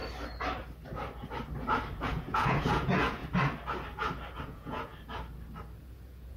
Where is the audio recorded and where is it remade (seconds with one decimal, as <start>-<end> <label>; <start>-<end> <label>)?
0.0-2.0 recorded; 2.0-3.2 remade; 3.2-4.4 recorded; 4.4-4.9 remade; 4.9-5.8 recorded; 5.8-6.4 remade

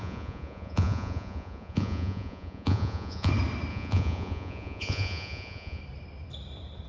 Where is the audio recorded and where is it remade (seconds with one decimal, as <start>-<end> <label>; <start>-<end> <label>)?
0.0-3.3 remade; 3.3-3.7 recorded; 3.7-5.8 remade; 5.8-6.9 recorded

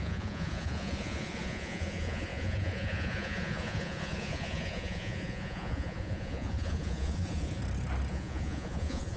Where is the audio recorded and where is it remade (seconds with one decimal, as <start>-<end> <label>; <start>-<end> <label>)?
0.0-7.6 remade; 7.6-8.1 recorded; 8.1-9.2 remade

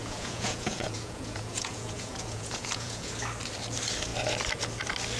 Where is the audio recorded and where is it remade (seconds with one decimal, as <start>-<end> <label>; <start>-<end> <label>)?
0.0-3.1 remade; 3.1-5.2 recorded